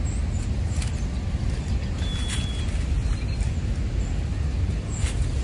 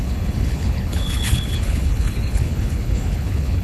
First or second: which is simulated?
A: second